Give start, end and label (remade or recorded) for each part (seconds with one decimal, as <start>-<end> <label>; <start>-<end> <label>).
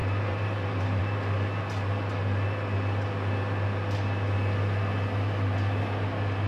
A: 0.0-1.0 remade; 1.0-6.5 recorded